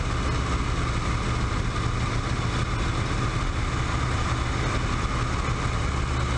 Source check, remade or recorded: recorded